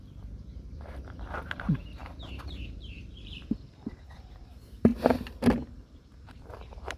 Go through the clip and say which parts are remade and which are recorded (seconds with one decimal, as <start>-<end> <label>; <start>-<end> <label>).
0.0-4.9 remade; 4.9-5.6 recorded; 5.6-7.0 remade